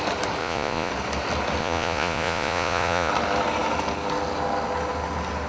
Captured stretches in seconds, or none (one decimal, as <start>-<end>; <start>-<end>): 0.0-0.4; 0.9-1.6; 3.1-5.5